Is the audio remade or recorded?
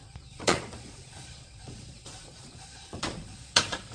remade